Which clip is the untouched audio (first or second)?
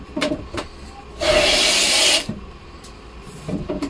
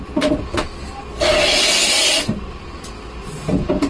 second